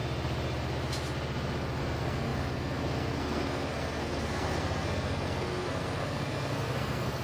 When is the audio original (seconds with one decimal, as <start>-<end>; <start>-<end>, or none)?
0.0-1.8